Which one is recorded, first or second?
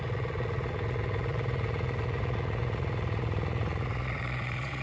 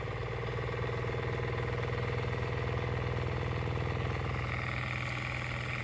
second